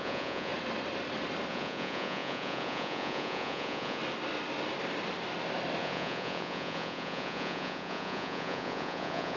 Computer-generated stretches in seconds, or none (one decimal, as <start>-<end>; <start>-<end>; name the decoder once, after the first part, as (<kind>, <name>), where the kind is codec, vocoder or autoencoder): 0.0-0.5 (vocoder, Vocos); 1.5-4.0; 5.8-9.4